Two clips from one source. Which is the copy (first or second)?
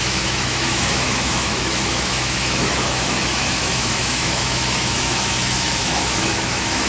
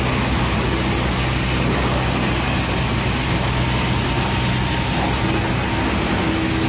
first